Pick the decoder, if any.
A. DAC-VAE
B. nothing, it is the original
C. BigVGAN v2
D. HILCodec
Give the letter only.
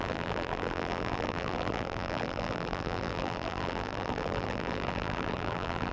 C